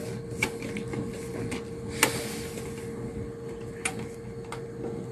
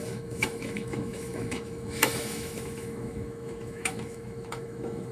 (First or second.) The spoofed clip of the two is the second